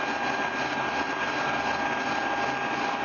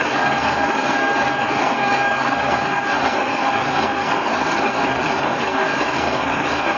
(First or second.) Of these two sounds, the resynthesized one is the second